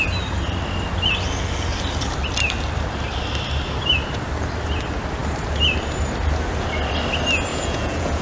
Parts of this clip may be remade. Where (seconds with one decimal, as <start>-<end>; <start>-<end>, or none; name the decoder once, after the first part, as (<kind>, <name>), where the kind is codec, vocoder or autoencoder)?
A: 7.5-8.2 (vocoder, Vocos)